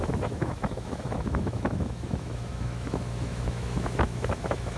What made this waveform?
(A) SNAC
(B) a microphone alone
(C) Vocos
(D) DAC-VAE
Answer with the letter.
D